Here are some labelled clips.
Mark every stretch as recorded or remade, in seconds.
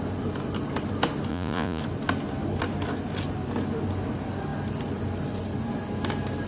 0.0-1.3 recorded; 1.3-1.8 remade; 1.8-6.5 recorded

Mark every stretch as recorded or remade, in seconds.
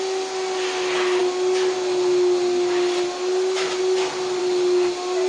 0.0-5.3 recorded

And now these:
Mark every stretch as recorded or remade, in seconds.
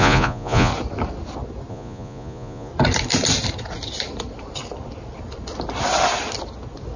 0.0-0.7 remade; 0.7-1.7 recorded; 1.7-2.7 remade; 2.7-7.0 recorded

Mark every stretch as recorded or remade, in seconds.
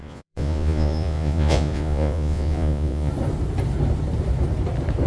0.0-3.1 remade; 3.1-5.1 recorded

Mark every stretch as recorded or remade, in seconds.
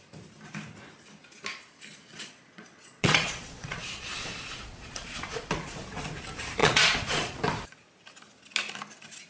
0.0-2.1 recorded; 2.1-6.0 remade; 6.0-6.6 recorded; 6.6-7.4 remade; 7.4-9.3 recorded